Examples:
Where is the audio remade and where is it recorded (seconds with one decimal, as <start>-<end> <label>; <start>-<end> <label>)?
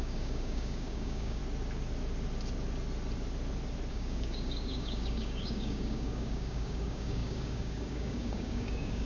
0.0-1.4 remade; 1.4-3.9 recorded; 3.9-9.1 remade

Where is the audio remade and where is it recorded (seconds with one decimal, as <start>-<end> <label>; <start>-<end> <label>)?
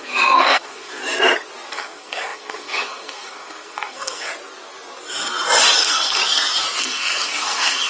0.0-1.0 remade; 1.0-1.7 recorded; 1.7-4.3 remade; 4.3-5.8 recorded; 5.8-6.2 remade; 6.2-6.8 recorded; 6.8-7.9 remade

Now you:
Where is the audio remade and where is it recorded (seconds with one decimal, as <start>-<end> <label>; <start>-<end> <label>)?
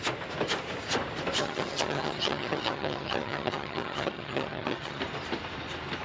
0.0-1.4 recorded; 1.4-5.0 remade; 5.0-6.0 recorded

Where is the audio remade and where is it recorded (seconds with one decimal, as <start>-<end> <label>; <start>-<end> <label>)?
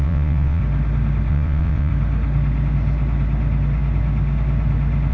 0.0-0.6 remade; 0.6-1.3 recorded; 1.3-1.9 remade; 1.9-5.1 recorded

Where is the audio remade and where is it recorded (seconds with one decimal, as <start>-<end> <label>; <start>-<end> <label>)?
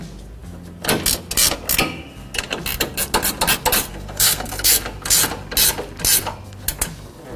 0.0-3.9 recorded; 3.9-4.7 remade; 4.7-7.4 recorded